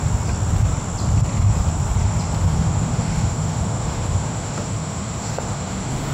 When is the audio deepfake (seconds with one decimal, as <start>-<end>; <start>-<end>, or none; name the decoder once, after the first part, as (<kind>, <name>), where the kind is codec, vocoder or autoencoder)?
2.4-6.1 (autoencoder, DAC-VAE)